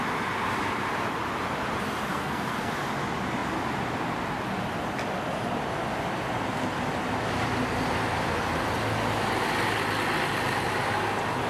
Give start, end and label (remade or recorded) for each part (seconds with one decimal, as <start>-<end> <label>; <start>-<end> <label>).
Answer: 0.0-2.1 recorded; 2.1-2.7 remade; 2.7-11.5 recorded